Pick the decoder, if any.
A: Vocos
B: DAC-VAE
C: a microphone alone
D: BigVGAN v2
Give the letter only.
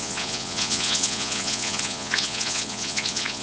A